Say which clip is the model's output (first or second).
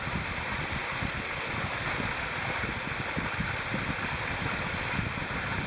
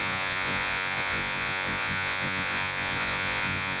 second